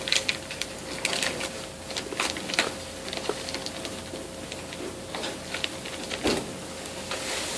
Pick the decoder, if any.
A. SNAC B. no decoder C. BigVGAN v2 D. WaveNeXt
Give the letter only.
B